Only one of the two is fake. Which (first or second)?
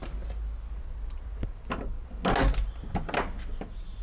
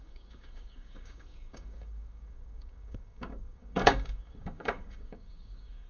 second